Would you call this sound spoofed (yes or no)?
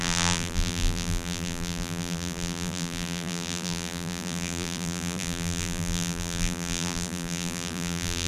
yes